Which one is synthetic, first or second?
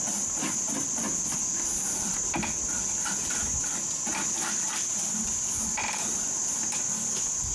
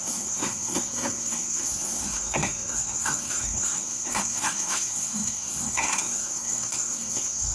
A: second